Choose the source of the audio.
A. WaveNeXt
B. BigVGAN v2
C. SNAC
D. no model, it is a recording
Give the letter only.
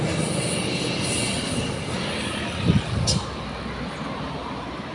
D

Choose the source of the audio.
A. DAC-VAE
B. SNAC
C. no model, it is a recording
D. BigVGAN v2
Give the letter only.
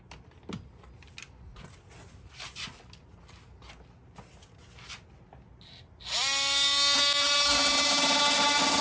C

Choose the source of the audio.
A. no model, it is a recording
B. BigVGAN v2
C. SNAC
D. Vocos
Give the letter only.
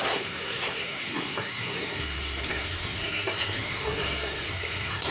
C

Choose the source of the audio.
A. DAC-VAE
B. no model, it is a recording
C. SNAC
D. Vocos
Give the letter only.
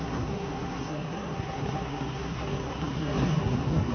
C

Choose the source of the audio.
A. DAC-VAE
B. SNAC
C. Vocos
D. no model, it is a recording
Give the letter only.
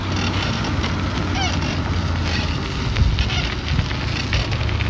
D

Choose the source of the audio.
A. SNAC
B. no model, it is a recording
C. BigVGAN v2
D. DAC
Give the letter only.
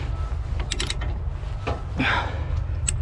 B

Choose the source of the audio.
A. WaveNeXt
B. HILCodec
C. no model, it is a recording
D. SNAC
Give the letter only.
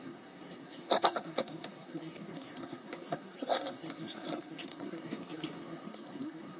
D